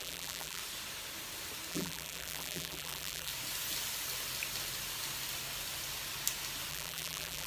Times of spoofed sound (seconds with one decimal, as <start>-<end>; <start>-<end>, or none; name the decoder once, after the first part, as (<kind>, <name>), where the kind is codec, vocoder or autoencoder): 0.0-0.6 (vocoder, BigVGAN v2); 1.7-3.3; 6.7-7.5